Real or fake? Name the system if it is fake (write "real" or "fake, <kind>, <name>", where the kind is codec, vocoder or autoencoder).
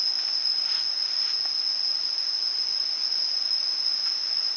real